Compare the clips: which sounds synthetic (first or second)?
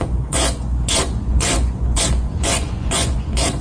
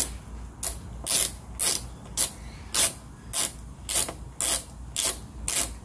first